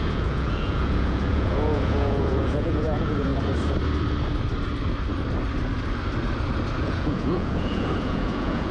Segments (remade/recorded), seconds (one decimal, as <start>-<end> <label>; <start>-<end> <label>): 0.0-3.3 remade; 3.3-6.8 recorded; 6.8-8.7 remade